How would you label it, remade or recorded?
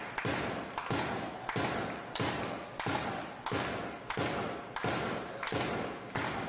recorded